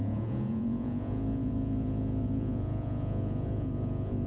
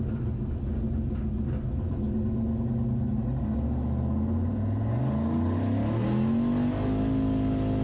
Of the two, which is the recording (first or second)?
second